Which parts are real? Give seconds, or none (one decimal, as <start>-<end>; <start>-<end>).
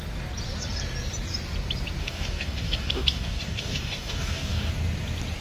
0.0-2.0; 4.7-5.4